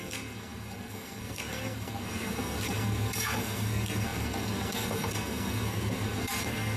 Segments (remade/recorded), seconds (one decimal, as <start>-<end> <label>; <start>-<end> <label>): 0.0-6.8 remade